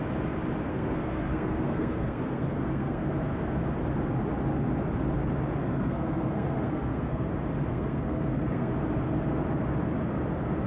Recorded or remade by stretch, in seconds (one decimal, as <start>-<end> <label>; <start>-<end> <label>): 0.0-0.7 recorded; 0.7-3.1 remade; 3.1-5.6 recorded; 5.6-7.3 remade; 7.3-7.7 recorded; 7.7-8.7 remade; 8.7-10.7 recorded